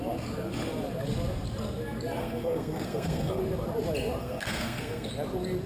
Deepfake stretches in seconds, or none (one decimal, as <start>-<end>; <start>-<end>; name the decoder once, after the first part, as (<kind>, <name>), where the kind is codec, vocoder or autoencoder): 2.2-3.4 (codec, SNAC); 4.2-5.1